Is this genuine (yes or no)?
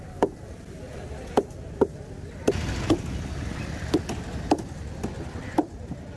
yes